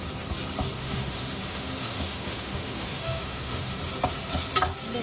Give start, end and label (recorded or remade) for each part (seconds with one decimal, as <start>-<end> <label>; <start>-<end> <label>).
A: 0.0-0.8 recorded; 0.8-3.8 remade; 3.8-5.0 recorded